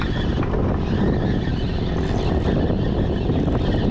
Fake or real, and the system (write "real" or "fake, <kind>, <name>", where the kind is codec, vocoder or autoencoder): real